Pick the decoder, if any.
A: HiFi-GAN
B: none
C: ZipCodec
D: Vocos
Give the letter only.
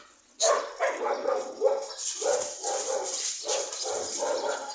B